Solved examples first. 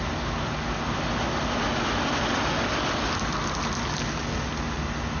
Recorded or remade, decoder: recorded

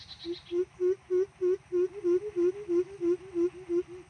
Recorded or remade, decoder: recorded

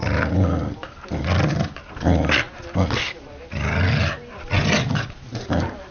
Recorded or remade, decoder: recorded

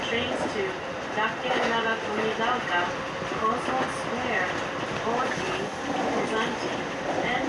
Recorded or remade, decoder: recorded